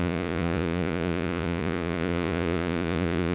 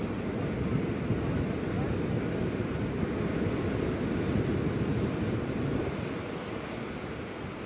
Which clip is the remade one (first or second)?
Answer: first